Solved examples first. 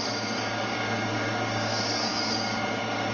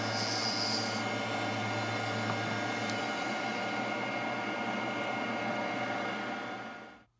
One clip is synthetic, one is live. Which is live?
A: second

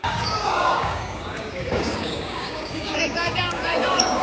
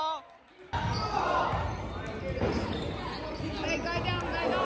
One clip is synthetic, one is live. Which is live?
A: second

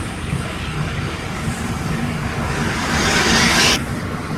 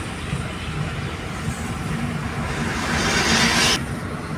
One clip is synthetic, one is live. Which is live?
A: second